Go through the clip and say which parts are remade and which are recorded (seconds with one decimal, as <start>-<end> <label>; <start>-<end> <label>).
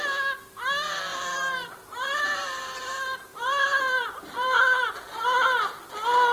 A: 0.0-1.1 recorded; 1.1-4.9 remade; 4.9-6.3 recorded